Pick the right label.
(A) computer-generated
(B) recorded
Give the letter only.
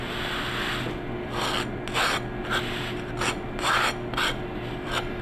B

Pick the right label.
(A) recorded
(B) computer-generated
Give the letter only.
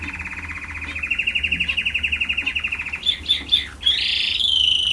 A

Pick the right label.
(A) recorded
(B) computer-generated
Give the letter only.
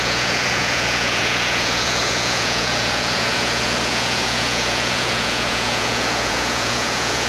B